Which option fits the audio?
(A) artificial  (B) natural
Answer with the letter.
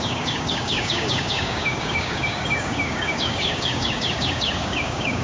A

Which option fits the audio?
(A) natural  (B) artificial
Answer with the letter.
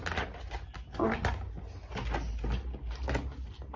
A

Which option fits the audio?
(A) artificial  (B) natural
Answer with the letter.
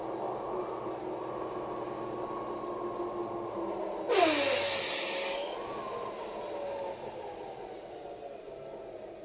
B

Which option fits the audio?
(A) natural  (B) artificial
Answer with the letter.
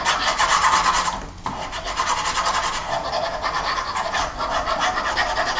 A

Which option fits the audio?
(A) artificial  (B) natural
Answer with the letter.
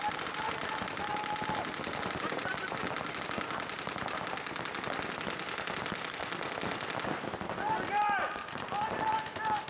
B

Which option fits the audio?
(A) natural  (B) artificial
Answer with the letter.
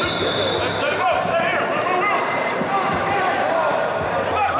A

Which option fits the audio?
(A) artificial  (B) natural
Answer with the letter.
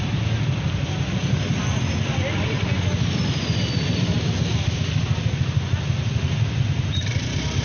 B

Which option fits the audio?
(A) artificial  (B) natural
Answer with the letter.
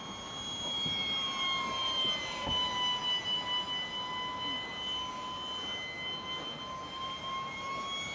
B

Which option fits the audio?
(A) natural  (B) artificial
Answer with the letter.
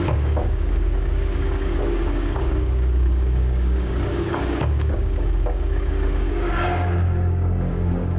B